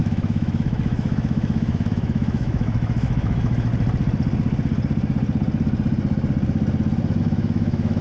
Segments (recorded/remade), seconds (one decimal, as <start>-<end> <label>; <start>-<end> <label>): 0.0-3.7 remade; 3.7-7.2 recorded; 7.2-8.0 remade